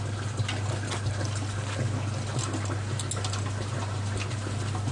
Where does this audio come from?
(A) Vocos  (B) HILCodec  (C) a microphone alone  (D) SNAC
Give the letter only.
C